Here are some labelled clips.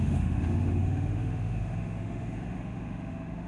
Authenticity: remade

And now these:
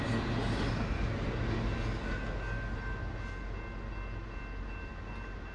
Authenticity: recorded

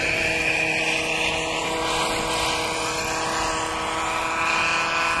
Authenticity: recorded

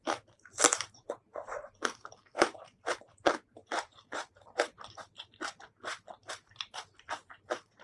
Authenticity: remade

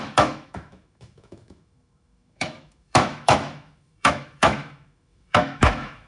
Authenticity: remade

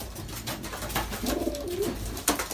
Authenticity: recorded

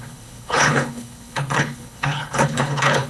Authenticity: remade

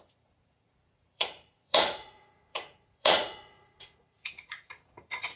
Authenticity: remade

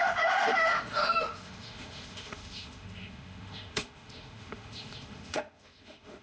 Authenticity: remade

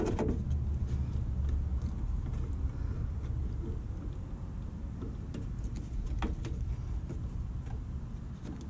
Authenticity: recorded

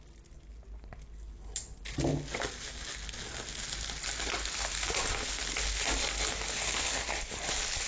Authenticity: recorded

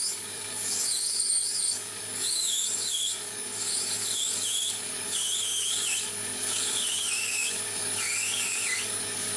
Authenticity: remade